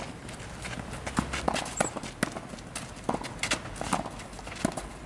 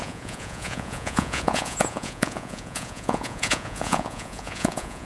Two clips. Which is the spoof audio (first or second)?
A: second